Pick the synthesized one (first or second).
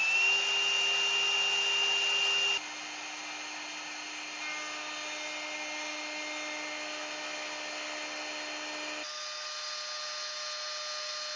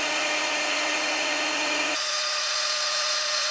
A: second